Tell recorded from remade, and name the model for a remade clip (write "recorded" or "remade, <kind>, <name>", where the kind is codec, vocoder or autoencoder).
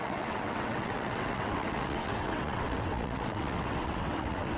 remade, vocoder, WaveNeXt